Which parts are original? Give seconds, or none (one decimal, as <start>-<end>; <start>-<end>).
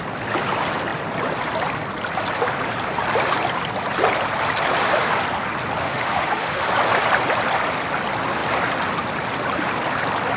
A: 0.0-5.8; 6.7-10.4